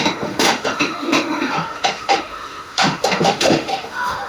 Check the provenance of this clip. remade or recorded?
remade